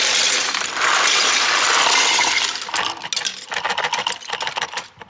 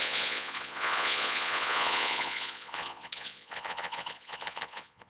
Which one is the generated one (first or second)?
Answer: second